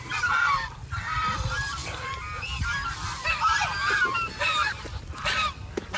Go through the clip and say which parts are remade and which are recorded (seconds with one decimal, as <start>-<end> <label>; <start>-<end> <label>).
0.0-6.0 remade